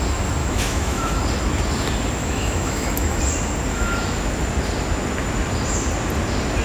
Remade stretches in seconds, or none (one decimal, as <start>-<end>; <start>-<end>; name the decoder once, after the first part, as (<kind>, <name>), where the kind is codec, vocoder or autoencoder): 0.4-1.2 (autoencoder, DAC-VAE); 2.2-3.2; 3.7-4.3